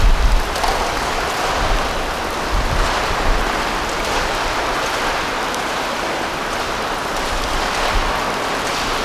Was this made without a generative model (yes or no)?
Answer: yes